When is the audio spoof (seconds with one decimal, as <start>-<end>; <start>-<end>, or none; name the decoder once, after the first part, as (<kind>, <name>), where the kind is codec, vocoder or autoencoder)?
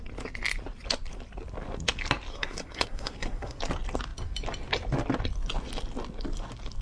2.3-3.6 (codec, SNAC)